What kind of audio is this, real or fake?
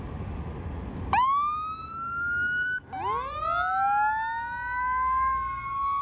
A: real